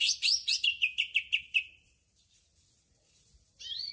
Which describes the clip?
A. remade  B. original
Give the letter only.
A